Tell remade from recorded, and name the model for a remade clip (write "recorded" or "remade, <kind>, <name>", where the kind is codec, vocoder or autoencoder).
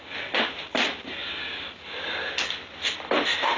recorded